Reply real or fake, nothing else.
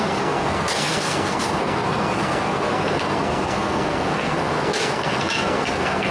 fake